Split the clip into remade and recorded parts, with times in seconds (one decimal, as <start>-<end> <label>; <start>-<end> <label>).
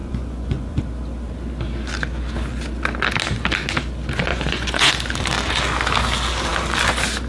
0.0-0.8 remade; 0.8-4.3 recorded; 4.3-4.9 remade; 4.9-7.3 recorded